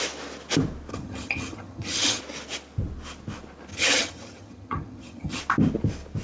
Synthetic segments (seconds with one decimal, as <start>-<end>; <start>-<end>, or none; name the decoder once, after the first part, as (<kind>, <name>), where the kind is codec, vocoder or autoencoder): 0.9-2.2 (vocoder, HiFi-GAN); 3.7-5.4